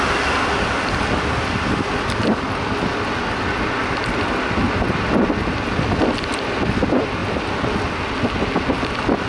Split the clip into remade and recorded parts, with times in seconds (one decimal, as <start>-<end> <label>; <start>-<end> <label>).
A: 0.0-9.3 recorded